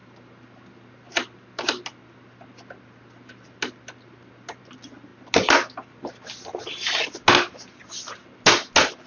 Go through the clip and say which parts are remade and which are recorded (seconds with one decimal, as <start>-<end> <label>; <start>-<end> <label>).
0.0-9.1 recorded